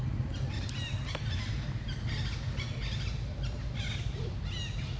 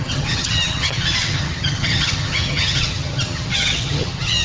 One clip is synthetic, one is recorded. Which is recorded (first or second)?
first